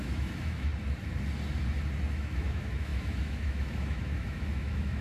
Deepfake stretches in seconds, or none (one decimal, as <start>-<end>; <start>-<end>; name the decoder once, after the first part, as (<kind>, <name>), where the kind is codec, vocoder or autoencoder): 0.0-0.7 (autoencoder, DAC-VAE); 2.1-5.0